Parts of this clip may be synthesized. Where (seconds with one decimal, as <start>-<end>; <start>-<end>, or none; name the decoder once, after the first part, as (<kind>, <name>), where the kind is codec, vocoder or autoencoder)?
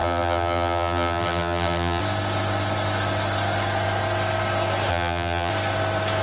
0.0-2.0 (vocoder, BigVGAN v2); 4.9-5.5